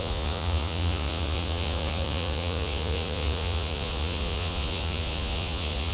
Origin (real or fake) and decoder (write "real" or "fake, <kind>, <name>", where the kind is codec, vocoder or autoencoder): fake, vocoder, Vocos